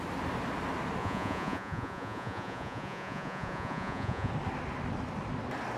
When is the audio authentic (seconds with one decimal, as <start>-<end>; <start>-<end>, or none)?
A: 0.0-1.0; 4.3-5.8